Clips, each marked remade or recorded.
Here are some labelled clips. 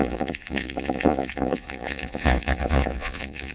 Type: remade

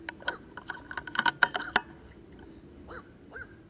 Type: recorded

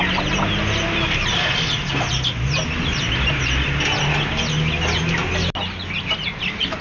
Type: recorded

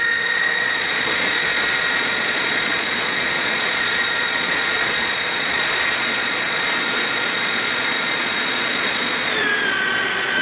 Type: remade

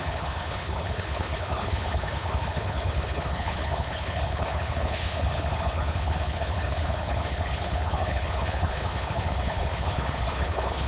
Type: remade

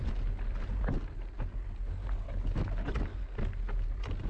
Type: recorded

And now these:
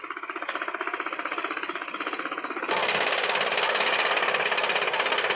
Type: recorded